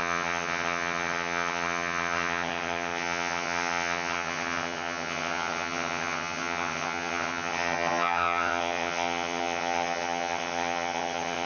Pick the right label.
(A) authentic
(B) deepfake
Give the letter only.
B